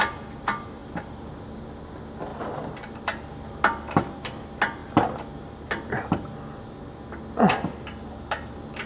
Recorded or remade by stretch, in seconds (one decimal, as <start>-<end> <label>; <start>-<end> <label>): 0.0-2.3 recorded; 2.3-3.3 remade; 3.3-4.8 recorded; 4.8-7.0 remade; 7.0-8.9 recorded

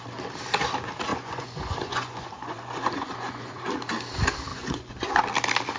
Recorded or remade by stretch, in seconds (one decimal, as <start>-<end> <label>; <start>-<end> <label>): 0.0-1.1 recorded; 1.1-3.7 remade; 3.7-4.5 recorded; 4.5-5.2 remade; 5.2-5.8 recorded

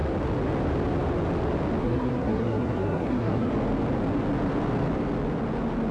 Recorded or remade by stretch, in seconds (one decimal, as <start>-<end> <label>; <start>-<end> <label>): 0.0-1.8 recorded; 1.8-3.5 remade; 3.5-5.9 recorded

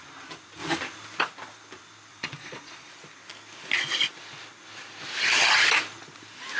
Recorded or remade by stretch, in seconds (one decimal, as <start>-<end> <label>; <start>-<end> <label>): 0.0-2.1 recorded; 2.1-2.9 remade; 2.9-6.6 recorded